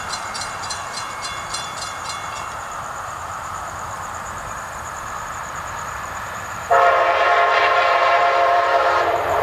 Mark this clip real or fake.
fake